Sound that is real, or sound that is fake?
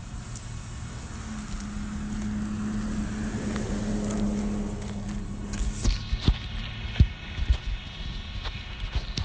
real